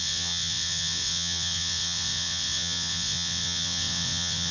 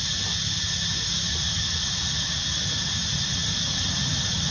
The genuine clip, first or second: second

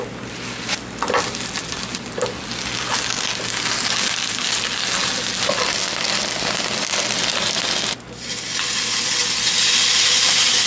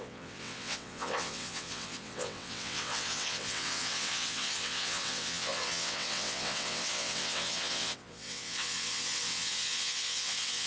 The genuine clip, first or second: first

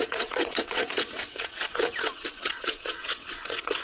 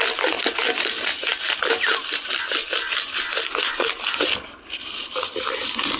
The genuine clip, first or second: second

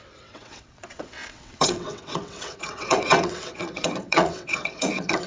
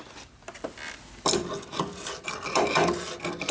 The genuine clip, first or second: second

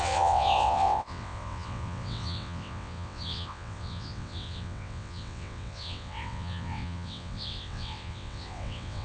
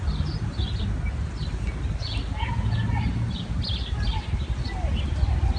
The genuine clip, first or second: second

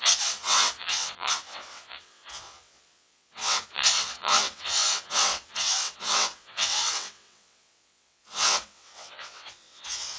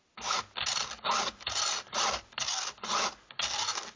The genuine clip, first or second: second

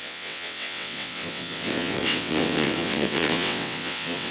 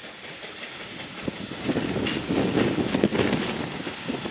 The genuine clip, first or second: second